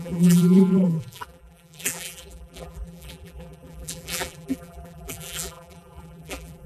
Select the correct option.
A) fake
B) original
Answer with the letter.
A